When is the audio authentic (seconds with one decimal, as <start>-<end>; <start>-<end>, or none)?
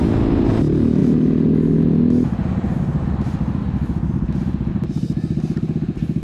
0.0-6.2